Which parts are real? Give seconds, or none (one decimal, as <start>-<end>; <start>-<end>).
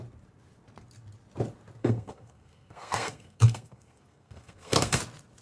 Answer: 0.0-1.8; 5.0-5.4